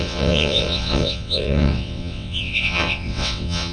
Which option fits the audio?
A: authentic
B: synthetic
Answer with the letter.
B